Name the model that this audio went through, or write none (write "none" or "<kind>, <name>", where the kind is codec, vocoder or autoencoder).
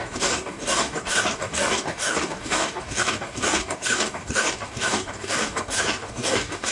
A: codec, DAC